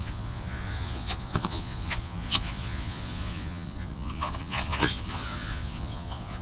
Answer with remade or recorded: remade